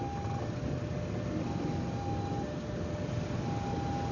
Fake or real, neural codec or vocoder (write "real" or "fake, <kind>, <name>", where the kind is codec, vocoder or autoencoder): real